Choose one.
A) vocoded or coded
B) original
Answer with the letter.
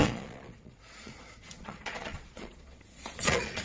A